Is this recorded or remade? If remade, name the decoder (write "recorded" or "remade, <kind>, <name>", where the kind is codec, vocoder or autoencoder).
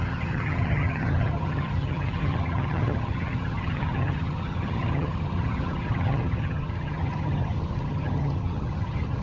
remade, vocoder, HiFi-GAN